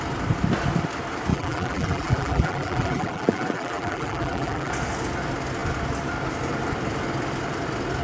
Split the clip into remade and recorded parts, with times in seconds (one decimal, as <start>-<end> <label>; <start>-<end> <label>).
0.0-1.3 recorded; 1.3-4.7 remade; 4.7-8.0 recorded